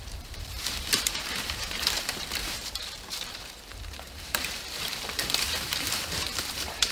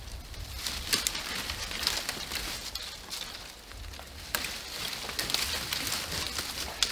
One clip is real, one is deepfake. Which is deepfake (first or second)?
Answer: first